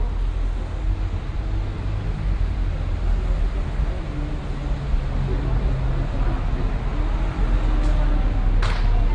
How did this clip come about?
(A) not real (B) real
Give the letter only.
B